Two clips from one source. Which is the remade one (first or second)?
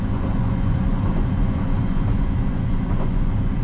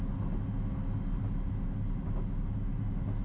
first